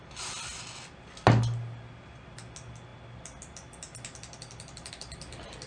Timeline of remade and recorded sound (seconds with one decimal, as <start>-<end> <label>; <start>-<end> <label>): 0.0-5.7 recorded